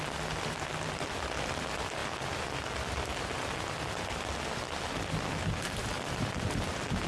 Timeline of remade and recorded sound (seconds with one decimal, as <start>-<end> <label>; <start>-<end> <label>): 0.0-7.1 recorded